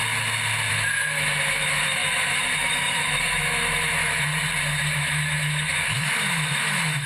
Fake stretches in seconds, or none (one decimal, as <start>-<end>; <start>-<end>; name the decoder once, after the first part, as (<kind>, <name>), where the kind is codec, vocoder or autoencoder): 0.7-4.3 (autoencoder, DAC-VAE); 4.8-7.1